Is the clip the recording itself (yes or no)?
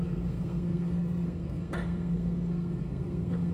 no